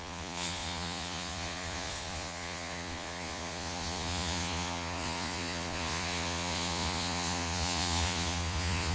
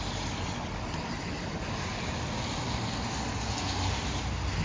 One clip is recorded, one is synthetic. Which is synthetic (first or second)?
first